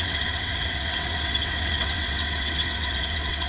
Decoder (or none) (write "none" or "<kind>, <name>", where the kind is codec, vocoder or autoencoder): vocoder, WaveNeXt